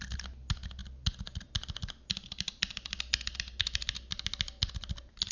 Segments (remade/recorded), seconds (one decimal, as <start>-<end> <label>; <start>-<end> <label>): 0.0-5.3 recorded